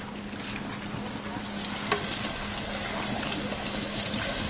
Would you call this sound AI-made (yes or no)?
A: no